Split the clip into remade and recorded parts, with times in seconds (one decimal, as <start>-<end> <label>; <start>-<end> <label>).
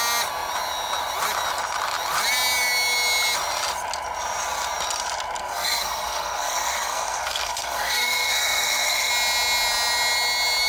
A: 0.0-5.4 recorded; 5.4-9.1 remade; 9.1-10.7 recorded